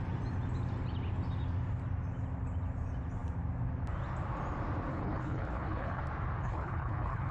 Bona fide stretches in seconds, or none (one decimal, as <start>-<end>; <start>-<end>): 0.0-4.9; 6.0-6.4